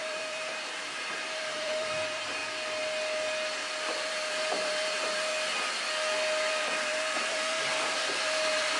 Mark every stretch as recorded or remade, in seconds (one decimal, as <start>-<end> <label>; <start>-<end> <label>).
0.0-2.4 remade; 2.4-4.0 recorded; 4.0-5.3 remade; 5.3-6.5 recorded; 6.5-8.8 remade